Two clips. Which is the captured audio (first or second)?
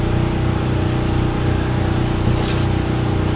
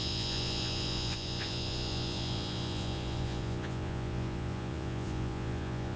first